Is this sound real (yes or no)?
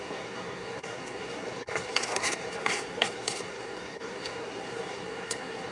no